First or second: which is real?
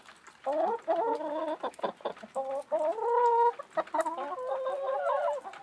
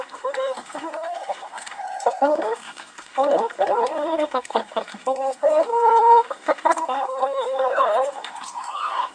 first